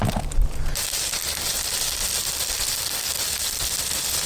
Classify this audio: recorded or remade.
recorded